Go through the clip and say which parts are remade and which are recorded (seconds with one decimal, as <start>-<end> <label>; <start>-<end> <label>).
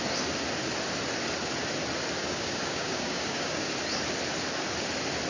0.0-2.2 recorded; 2.2-3.7 remade; 3.7-5.3 recorded